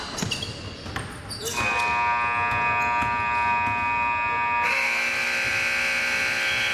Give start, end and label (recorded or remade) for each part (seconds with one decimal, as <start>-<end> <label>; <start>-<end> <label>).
0.0-6.7 recorded